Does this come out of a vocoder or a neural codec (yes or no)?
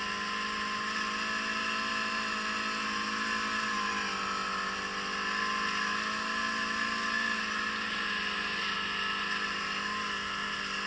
no